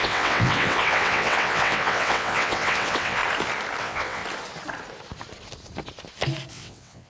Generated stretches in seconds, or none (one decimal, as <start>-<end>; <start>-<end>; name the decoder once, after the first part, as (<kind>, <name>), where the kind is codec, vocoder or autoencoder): 0.0-3.2 (vocoder, WaveNeXt); 3.8-4.2; 6.5-7.1